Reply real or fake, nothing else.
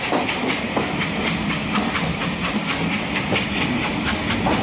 real